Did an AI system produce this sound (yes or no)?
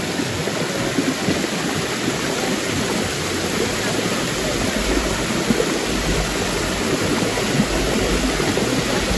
no